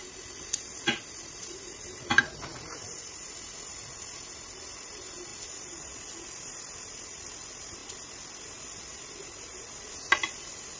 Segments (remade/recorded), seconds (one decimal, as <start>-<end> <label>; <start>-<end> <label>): 0.0-10.8 recorded